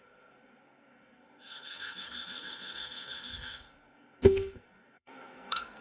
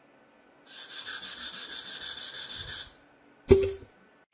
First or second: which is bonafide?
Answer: second